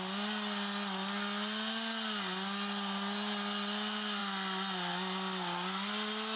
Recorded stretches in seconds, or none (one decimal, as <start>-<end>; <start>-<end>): 0.0-6.4